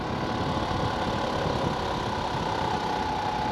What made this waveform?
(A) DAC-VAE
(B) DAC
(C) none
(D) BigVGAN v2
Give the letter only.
C